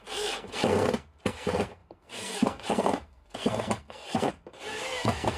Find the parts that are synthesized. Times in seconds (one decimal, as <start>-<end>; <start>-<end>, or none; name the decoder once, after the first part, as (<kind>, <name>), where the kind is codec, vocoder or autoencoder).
0.0-5.4 (codec, SNAC)